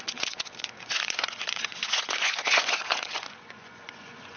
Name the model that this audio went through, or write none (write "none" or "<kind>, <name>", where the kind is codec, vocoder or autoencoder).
vocoder, Vocos